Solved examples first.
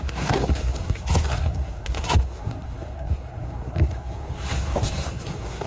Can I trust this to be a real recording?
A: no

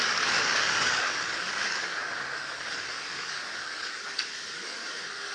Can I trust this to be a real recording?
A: no